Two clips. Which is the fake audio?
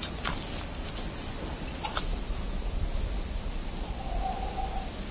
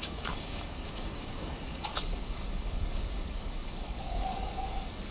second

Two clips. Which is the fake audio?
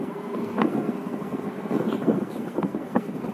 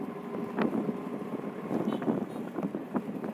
first